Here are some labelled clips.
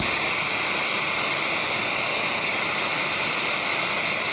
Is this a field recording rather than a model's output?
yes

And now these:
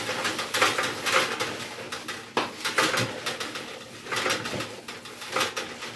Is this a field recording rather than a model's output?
yes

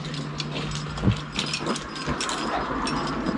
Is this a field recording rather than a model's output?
yes